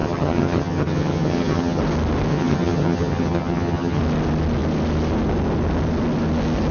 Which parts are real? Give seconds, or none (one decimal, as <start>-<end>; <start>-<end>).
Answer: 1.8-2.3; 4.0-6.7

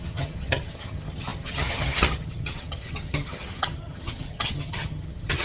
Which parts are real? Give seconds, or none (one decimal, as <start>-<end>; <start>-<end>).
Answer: none

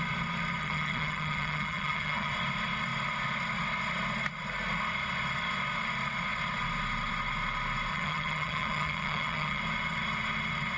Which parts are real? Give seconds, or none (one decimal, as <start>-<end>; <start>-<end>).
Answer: 0.0-0.6; 2.3-7.9; 9.6-10.8